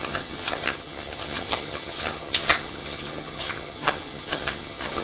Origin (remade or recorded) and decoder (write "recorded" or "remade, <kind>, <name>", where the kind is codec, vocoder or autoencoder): remade, vocoder, HiFi-GAN